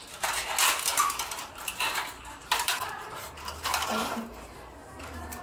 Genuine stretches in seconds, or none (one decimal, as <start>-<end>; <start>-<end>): 0.0-2.4